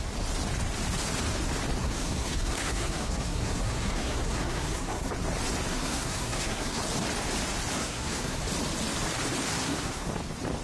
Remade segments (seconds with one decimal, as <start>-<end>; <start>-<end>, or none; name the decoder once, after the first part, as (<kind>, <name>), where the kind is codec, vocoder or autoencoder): 1.8-5.1 (codec, SNAC); 5.7-6.8; 7.8-8.4; 9.5-10.1